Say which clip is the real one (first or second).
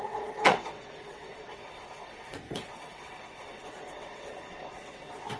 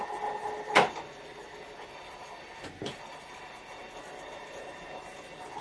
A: second